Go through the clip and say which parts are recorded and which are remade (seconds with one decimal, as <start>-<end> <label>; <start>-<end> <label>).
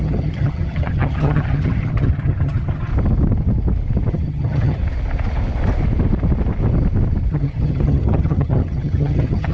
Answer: 0.0-2.9 remade; 2.9-4.1 recorded; 4.1-4.8 remade; 4.8-7.3 recorded; 7.3-9.5 remade